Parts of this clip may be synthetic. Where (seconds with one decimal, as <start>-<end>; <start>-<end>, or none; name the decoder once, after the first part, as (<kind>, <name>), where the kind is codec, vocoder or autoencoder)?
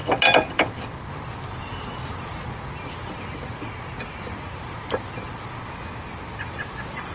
none